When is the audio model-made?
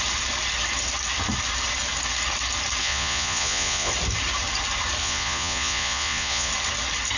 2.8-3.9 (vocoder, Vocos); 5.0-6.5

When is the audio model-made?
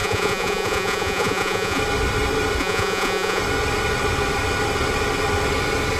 0.0-1.8 (vocoder, Vocos); 2.6-3.4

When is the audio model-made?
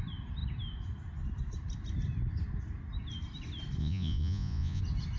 3.8-4.8 (vocoder, Vocos)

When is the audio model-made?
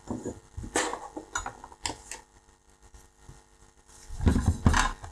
none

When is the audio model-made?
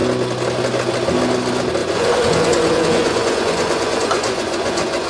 1.8-5.1 (vocoder, Vocos)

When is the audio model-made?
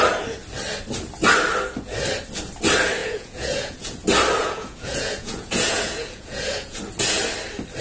3.0-4.0 (vocoder, Vocos); 4.4-6.8